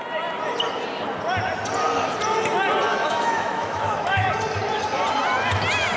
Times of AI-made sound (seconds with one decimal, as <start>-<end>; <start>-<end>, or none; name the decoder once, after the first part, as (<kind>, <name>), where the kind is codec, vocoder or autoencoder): 2.9-4.3 (autoencoder, DAC-VAE)